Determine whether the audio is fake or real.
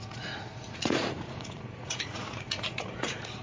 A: fake